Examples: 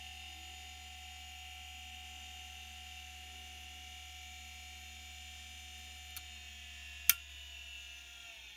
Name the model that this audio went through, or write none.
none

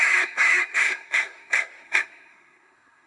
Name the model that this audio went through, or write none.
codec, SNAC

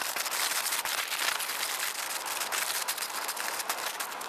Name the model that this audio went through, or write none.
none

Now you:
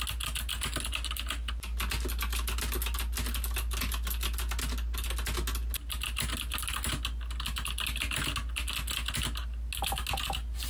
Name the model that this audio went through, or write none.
none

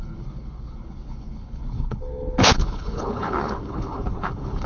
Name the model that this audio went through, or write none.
codec, HILCodec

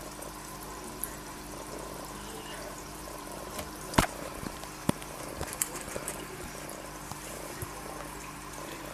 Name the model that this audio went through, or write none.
vocoder, BigVGAN v2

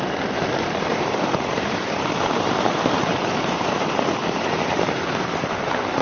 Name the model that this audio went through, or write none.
vocoder, BigVGAN v2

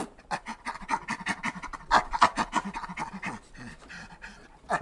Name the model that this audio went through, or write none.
none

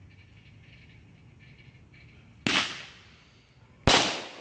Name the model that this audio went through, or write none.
none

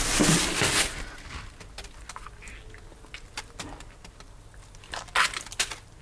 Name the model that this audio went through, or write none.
none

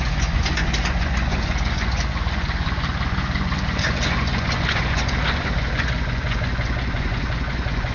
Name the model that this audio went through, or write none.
vocoder, Vocos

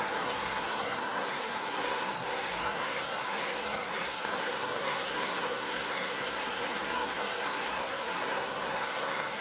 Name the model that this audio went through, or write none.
codec, SNAC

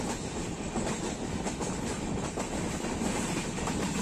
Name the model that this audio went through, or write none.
none